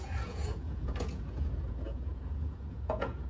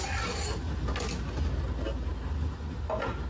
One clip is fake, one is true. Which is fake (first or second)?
first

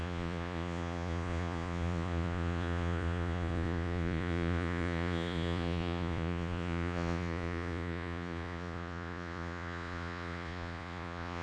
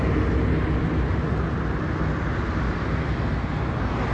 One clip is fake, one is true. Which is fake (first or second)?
first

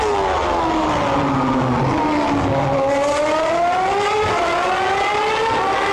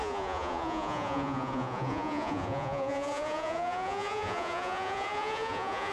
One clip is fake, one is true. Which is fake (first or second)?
second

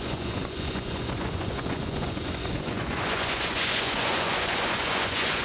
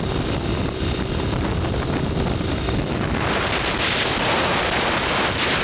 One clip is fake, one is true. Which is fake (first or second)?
first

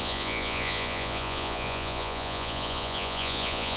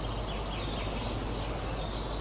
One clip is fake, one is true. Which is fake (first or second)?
first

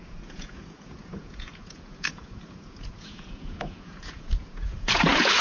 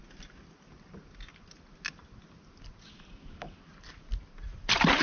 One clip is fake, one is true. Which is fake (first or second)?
first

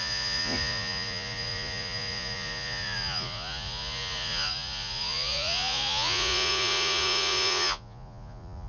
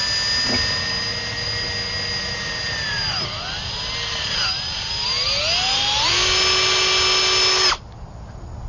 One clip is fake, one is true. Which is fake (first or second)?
first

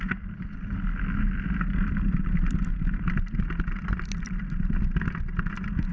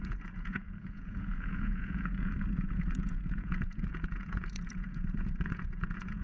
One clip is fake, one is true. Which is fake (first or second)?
second